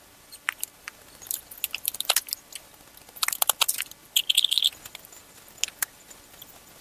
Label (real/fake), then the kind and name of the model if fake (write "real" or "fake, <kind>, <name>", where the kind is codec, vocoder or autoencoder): real